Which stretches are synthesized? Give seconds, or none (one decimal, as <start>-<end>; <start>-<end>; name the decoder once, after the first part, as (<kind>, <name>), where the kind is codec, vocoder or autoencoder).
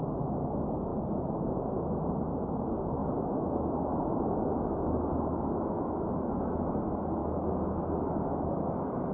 3.0-6.7 (autoencoder, DAC-VAE); 7.2-8.3